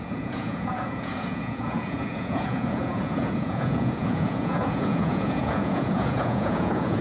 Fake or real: fake